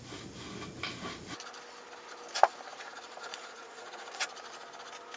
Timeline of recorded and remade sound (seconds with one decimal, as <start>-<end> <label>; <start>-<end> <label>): 0.0-2.7 recorded; 2.7-4.3 remade; 4.3-5.2 recorded